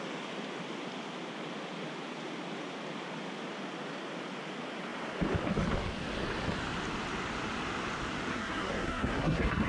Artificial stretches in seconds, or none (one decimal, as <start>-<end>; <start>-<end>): 8.3-9.7